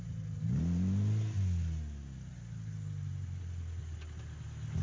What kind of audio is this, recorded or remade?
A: recorded